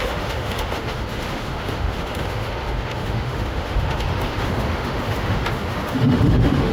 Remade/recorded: remade